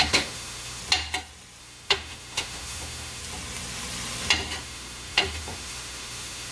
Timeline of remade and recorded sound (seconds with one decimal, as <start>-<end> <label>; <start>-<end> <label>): 0.0-0.8 remade; 0.8-1.6 recorded; 1.6-3.2 remade; 3.2-4.6 recorded; 4.6-6.5 remade

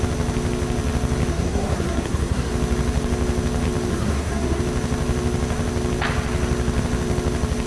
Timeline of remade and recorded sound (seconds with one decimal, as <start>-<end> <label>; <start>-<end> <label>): 0.0-1.3 recorded; 1.3-2.5 remade; 2.5-3.9 recorded; 3.9-4.6 remade; 4.6-7.7 recorded

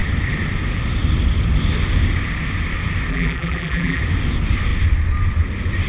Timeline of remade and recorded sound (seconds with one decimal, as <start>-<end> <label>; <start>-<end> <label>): 0.0-3.1 recorded; 3.1-4.0 remade; 4.0-5.9 recorded

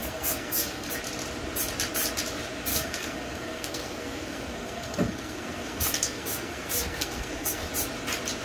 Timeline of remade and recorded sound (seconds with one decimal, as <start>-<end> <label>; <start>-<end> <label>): 0.0-0.9 remade; 0.9-2.7 recorded; 2.7-7.7 remade; 7.7-8.4 recorded